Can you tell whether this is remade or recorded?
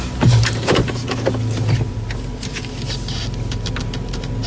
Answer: recorded